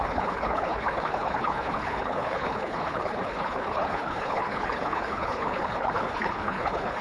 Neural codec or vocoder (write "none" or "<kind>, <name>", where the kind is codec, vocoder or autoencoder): codec, HILCodec